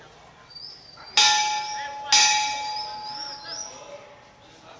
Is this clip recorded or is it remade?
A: recorded